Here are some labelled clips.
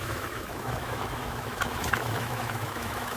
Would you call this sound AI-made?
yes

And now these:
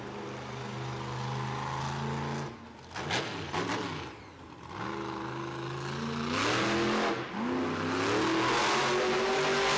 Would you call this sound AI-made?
no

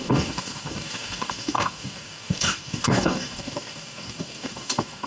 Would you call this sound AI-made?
yes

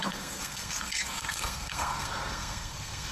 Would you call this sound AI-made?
yes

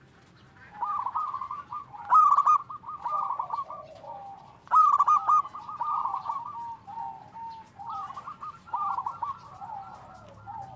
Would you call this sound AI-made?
no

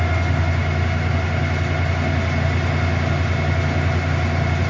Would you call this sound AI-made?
no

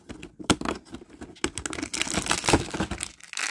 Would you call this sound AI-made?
no